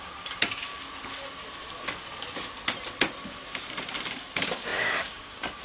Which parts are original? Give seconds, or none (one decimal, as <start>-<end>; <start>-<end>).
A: 0.7-4.1